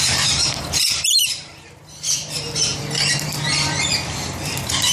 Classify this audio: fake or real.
fake